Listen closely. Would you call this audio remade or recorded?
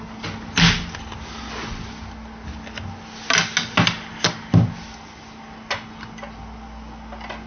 recorded